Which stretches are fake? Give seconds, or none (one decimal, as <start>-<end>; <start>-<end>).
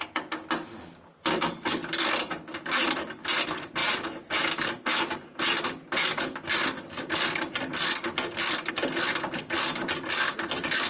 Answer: none